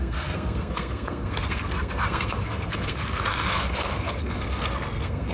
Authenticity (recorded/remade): remade